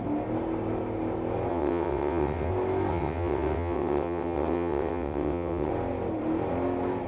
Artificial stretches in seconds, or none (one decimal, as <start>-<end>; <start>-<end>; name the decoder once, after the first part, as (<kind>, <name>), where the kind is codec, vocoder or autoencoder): 1.5-2.5 (vocoder, WaveNeXt); 2.9-5.7